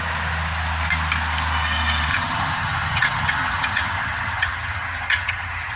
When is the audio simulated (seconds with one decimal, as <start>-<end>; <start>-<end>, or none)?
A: 2.1-5.8